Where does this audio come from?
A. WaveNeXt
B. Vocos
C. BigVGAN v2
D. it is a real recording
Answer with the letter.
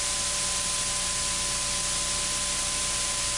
D